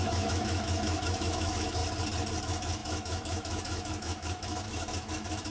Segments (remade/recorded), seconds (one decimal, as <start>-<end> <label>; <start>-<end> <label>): 0.0-1.8 remade; 1.8-2.4 recorded; 2.4-5.5 remade